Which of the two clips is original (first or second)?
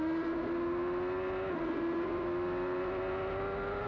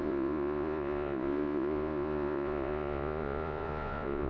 first